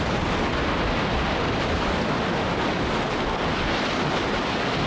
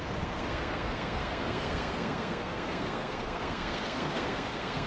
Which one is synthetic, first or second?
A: second